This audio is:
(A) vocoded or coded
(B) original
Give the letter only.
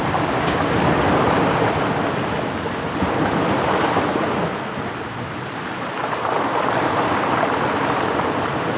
B